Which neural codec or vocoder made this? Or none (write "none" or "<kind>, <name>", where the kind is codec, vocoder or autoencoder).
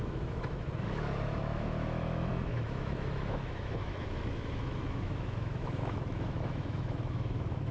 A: autoencoder, DAC-VAE